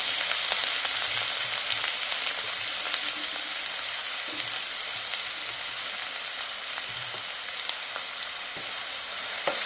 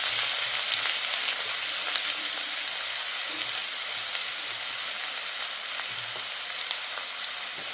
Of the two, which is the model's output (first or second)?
first